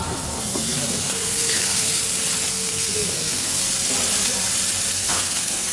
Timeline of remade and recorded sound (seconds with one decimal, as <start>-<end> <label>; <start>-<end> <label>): 0.0-2.0 remade; 2.0-2.5 recorded; 2.5-3.6 remade; 3.6-4.9 recorded; 4.9-5.7 remade